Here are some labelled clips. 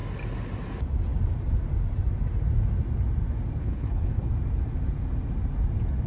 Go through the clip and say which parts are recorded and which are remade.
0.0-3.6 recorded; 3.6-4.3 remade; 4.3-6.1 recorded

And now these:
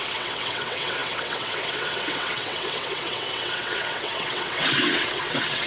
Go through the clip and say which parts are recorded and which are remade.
0.0-5.7 remade

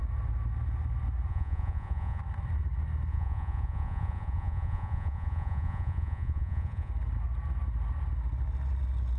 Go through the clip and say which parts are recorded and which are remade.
0.0-1.3 recorded; 1.3-2.2 remade; 2.2-3.1 recorded; 3.1-6.9 remade; 6.9-9.2 recorded

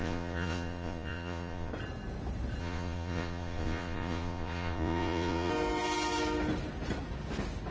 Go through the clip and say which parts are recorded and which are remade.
0.0-1.7 remade; 1.7-2.6 recorded; 2.6-5.5 remade; 5.5-7.7 recorded

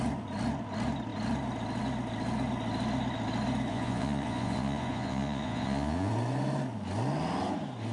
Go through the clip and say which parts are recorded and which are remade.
0.0-3.7 recorded; 3.7-6.1 remade; 6.1-7.9 recorded